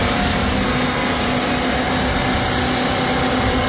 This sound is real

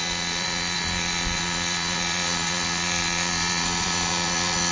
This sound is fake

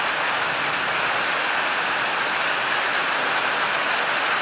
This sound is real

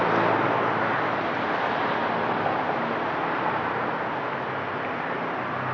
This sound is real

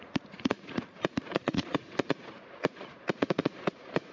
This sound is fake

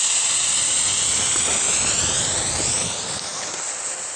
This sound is real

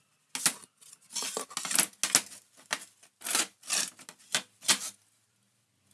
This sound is real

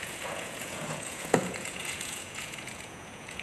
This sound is fake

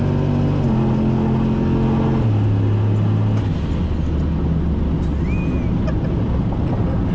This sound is real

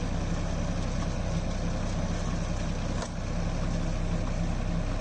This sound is real